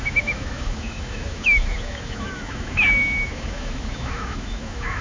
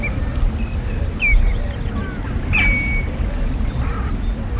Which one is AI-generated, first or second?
first